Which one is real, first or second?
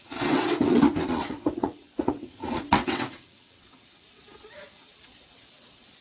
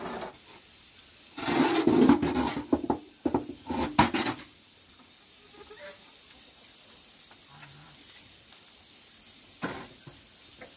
second